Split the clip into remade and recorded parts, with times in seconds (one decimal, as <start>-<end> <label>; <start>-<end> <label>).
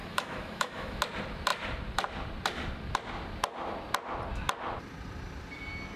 0.0-1.0 remade; 1.0-6.0 recorded